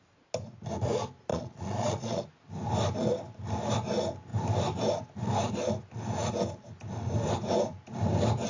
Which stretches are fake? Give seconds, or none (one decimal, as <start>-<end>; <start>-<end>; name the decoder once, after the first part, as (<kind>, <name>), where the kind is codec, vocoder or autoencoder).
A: 1.3-2.2 (vocoder, Vocos)